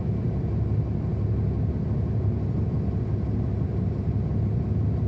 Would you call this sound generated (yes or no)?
no